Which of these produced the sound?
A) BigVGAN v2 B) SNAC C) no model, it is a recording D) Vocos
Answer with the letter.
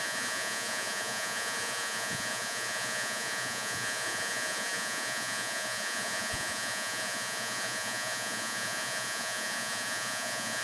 D